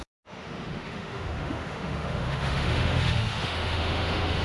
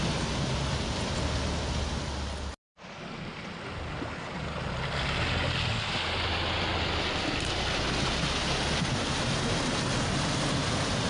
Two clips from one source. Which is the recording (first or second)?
second